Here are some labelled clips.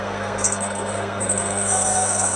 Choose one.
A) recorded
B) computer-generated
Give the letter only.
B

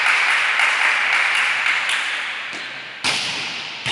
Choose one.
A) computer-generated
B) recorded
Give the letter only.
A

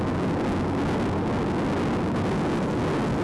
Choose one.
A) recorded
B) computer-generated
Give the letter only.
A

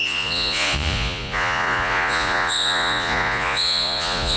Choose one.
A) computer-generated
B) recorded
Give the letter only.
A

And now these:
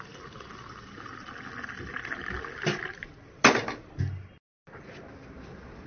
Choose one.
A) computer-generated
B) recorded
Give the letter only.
B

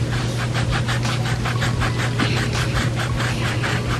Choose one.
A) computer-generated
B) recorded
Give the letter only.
B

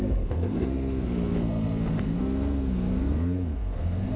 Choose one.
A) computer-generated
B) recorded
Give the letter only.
A